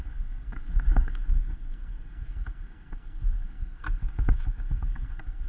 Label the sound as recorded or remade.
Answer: remade